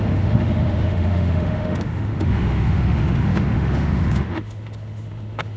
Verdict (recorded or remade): remade